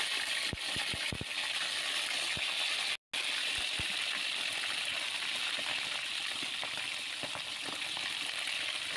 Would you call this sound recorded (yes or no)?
yes